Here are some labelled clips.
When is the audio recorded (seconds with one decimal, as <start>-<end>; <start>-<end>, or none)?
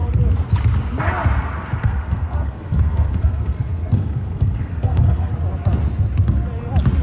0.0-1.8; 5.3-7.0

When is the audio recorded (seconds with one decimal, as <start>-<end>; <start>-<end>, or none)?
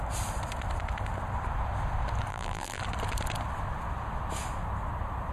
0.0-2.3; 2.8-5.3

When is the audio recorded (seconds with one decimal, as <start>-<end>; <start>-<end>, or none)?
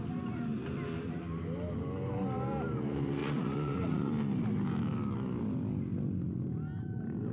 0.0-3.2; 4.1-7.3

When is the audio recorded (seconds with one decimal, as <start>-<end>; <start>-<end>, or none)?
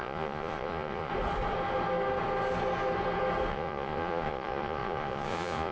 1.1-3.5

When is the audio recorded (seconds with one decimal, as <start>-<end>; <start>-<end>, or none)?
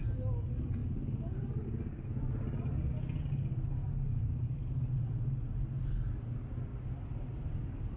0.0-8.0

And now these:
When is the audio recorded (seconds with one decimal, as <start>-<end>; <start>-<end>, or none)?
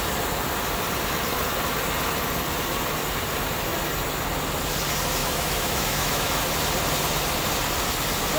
0.0-5.2; 6.4-8.4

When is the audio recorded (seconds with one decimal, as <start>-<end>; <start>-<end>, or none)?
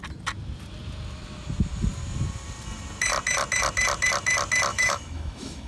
0.0-4.7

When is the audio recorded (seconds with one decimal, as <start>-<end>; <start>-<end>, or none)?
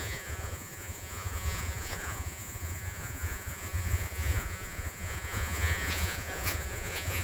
none